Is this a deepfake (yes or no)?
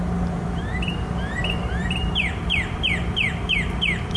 yes